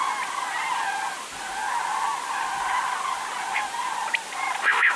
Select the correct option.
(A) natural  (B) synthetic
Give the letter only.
A